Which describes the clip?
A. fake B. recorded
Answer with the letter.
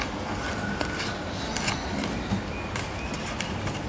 B